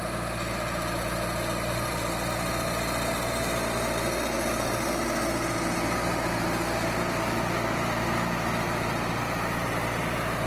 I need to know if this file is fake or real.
real